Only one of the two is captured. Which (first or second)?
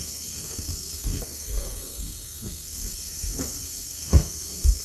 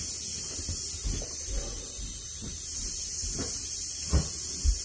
second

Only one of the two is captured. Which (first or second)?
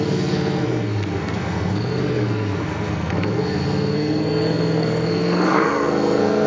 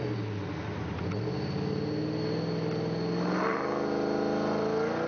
second